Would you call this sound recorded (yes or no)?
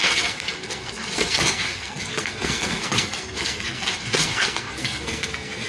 no